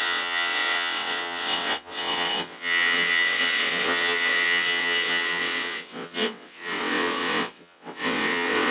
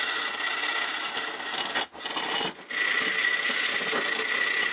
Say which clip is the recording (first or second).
second